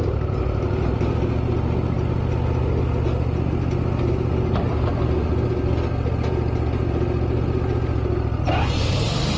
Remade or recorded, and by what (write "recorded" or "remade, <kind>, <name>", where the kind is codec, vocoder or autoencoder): recorded